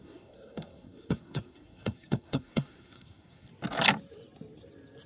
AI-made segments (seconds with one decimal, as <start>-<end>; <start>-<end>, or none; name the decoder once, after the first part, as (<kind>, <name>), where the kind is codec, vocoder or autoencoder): 0.0-3.5 (codec, SNAC)